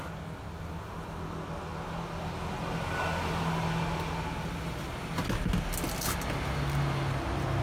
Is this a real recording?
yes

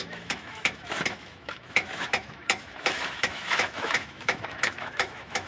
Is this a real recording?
no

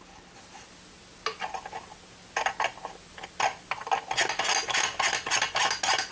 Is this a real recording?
yes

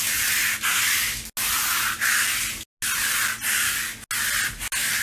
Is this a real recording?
yes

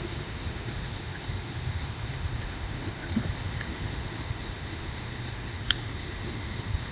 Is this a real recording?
no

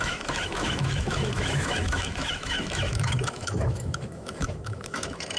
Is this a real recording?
no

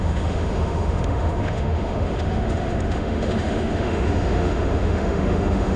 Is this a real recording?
no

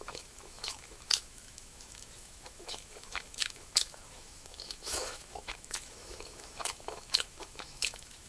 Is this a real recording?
no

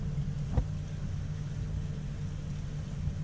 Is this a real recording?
yes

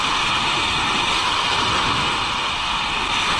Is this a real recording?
yes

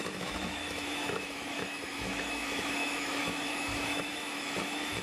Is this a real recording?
no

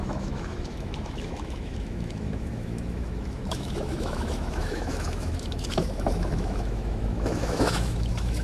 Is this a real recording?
no